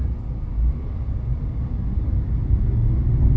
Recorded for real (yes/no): yes